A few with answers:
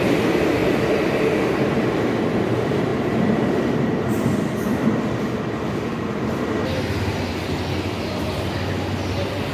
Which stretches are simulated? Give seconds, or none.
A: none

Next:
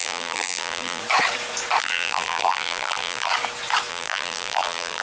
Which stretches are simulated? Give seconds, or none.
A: 0.0-1.0 (vocoder, BigVGAN v2); 1.8-3.3; 3.9-5.0

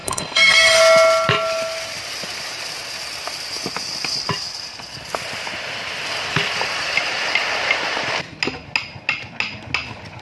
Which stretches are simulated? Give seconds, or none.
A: 0.0-0.8 (codec, SNAC)

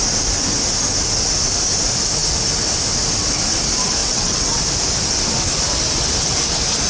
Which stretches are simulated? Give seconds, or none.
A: 4.0-4.6 (vocoder, WaveNeXt)